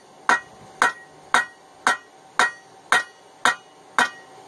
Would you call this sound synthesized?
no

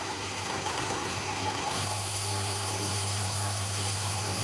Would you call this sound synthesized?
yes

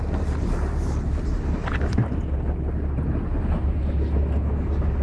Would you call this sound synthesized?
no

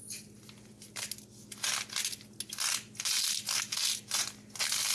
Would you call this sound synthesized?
no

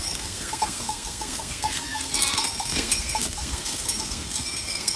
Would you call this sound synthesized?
yes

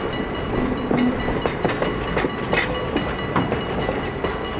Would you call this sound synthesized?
no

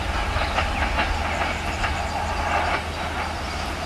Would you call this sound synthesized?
no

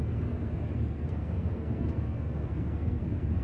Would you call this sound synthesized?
yes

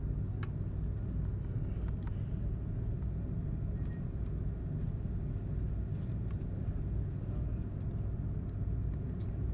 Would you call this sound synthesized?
no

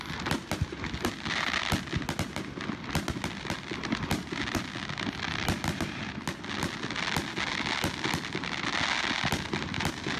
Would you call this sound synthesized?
no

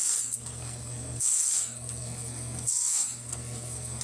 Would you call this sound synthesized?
yes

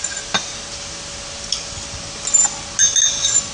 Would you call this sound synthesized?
no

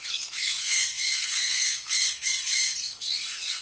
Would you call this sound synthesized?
yes